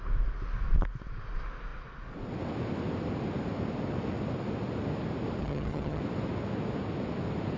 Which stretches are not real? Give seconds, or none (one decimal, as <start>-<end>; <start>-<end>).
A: 5.4-6.0

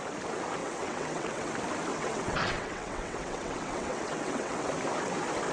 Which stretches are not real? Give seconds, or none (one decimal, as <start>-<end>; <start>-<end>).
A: 0.6-1.5; 1.9-4.7

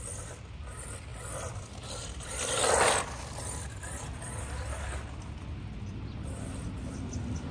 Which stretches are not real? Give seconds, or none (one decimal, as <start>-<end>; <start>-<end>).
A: none

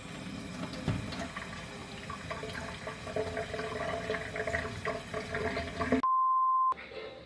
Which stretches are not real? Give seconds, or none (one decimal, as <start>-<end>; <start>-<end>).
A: none